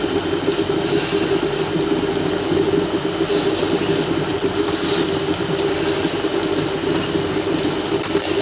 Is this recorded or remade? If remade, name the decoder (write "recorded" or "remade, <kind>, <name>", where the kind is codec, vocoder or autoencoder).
recorded